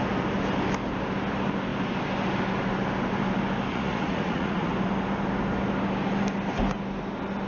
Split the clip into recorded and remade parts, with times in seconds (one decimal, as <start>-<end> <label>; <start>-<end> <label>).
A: 0.0-3.7 recorded; 3.7-4.7 remade; 4.7-7.5 recorded